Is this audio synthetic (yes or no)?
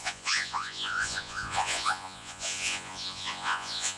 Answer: yes